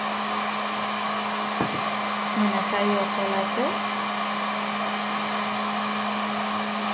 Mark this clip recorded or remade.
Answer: recorded